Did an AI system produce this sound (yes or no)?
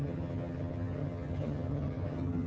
yes